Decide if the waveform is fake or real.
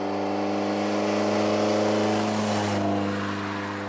real